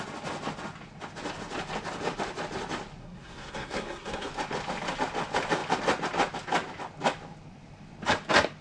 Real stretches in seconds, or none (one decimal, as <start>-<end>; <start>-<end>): 0.0-3.0; 4.3-8.6